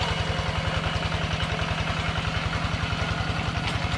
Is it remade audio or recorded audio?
recorded